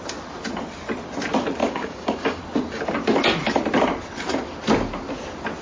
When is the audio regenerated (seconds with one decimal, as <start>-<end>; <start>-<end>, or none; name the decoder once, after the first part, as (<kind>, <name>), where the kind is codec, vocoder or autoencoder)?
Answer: 1.6-2.4 (codec, DAC)